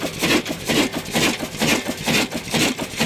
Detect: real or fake real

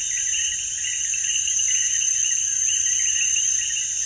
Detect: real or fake real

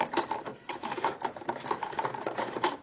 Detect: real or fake fake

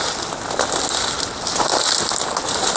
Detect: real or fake real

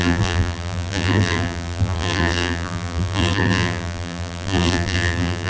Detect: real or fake fake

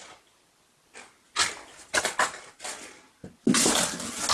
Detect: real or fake real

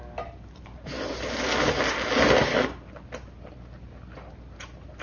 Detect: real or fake fake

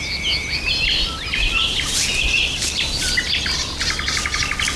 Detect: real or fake real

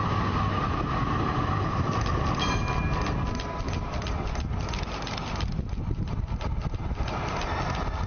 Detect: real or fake real